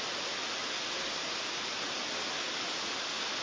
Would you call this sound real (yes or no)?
yes